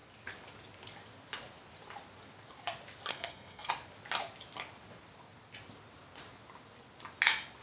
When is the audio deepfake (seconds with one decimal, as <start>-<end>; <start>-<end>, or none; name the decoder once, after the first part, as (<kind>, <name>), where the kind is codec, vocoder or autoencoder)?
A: 3.1-3.7 (codec, SNAC)